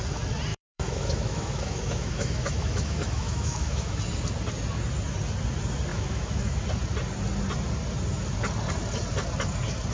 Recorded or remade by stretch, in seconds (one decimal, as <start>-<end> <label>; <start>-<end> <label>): 0.0-0.5 recorded; 0.5-4.0 remade; 4.0-5.9 recorded; 5.9-6.6 remade; 6.6-9.9 recorded